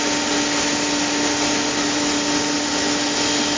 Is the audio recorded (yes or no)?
yes